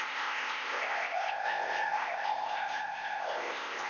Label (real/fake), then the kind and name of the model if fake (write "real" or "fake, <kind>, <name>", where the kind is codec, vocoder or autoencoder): fake, codec, ZipCodec